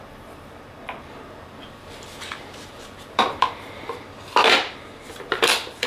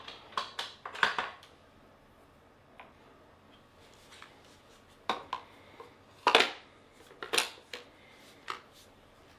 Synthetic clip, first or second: first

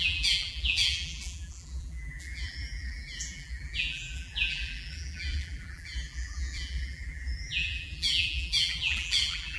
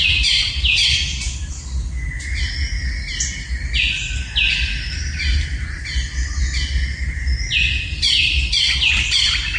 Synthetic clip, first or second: first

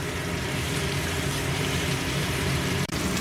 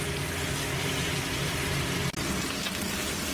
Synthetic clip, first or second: first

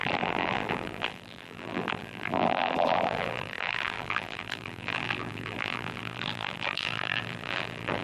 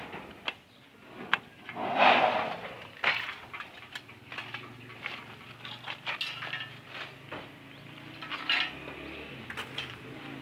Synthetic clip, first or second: first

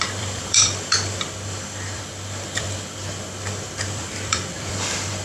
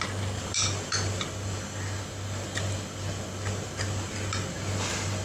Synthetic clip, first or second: first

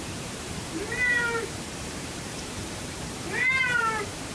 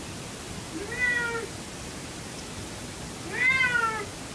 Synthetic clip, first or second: first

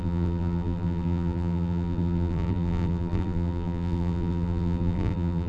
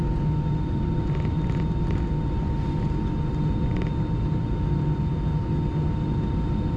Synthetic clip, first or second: first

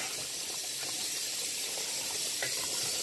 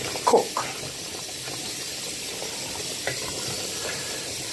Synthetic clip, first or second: first